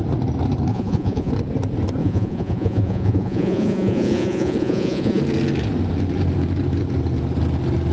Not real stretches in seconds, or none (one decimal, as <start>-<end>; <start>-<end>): 0.7-1.3; 2.0-5.2